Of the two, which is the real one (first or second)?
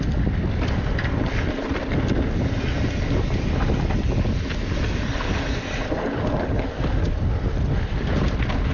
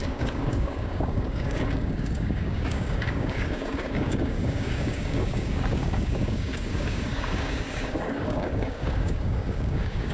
first